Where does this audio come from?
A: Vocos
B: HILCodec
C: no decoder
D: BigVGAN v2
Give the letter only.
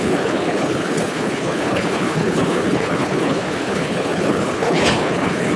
B